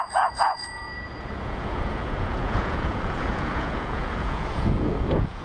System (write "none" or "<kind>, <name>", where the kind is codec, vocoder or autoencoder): vocoder, Vocos